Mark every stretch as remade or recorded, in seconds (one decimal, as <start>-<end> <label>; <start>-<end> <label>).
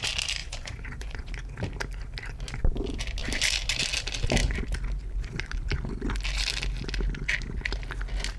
0.0-0.4 recorded; 0.4-1.3 remade; 1.3-8.4 recorded